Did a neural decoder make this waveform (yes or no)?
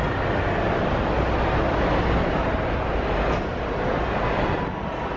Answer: no